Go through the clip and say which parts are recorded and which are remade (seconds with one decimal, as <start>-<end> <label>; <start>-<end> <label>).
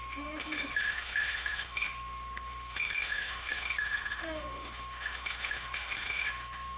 0.0-6.8 remade